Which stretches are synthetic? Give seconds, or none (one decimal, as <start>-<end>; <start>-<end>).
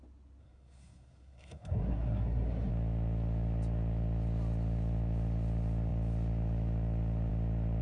0.4-2.7